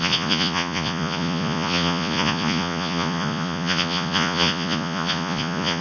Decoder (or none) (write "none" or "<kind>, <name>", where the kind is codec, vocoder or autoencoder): vocoder, Vocos